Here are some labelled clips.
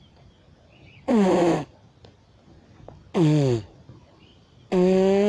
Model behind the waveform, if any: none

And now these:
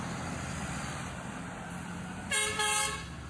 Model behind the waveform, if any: none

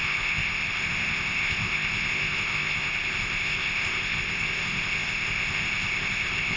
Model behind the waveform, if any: codec, ZipCodec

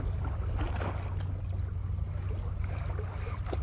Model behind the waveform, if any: none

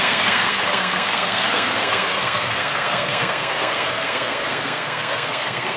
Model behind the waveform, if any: codec, SNAC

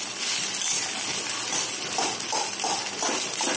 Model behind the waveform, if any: none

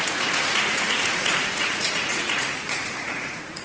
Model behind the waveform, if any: vocoder, Vocos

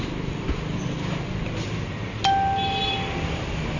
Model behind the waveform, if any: none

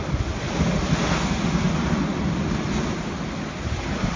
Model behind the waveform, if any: none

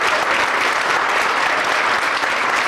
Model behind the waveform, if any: vocoder, BigVGAN v2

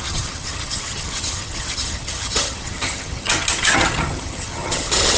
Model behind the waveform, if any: vocoder, HiFi-GAN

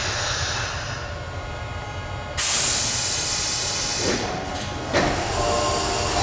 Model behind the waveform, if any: none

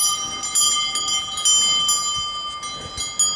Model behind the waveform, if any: none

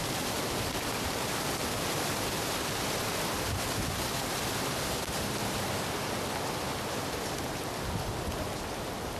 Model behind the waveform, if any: none